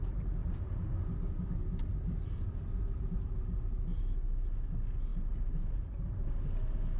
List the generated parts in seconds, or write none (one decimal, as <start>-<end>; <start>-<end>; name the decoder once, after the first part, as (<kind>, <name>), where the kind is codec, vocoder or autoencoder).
none